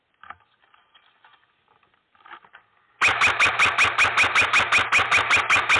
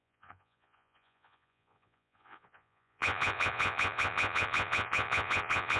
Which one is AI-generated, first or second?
second